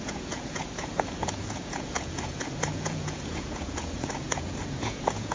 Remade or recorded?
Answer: remade